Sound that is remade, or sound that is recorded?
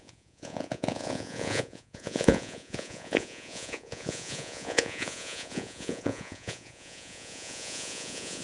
remade